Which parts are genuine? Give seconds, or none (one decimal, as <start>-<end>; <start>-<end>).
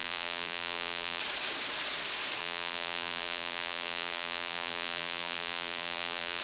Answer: 1.2-2.4